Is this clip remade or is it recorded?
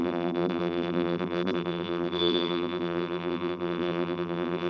remade